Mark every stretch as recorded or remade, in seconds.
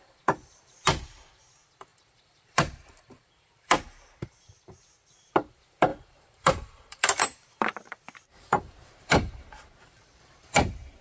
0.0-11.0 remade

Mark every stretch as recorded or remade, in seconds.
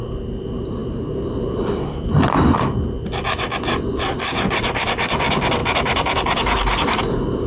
0.0-5.6 recorded; 5.6-7.0 remade; 7.0-7.5 recorded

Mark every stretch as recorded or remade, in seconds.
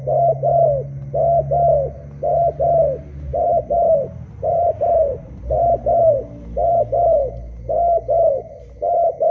0.0-9.3 recorded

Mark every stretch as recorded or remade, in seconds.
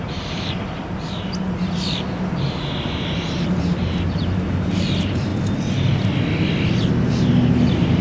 0.0-5.3 remade; 5.3-8.0 recorded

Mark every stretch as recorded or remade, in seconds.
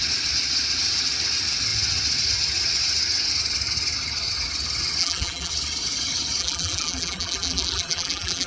0.0-5.0 recorded; 5.0-5.5 remade; 5.5-6.4 recorded; 6.4-8.5 remade